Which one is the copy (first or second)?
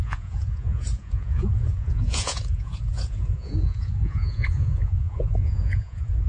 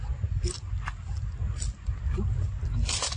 first